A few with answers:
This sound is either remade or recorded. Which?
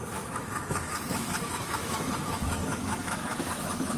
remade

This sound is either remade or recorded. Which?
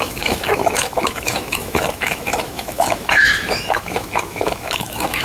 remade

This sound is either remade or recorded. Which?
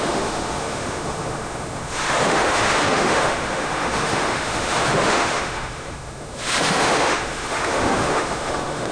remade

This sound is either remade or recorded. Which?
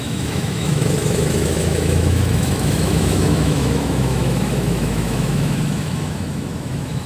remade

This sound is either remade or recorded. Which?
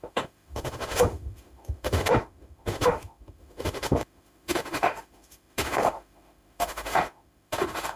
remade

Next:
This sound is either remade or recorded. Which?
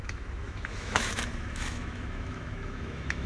remade